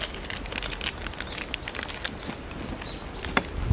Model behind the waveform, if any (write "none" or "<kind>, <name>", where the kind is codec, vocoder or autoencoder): none